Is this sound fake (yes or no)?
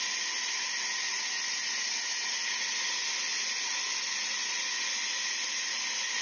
no